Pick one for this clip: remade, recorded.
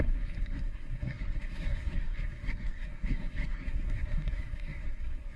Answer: remade